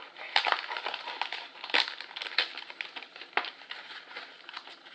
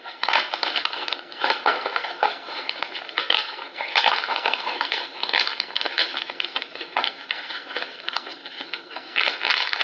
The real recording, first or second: first